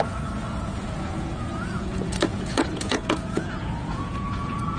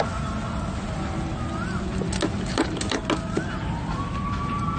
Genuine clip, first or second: second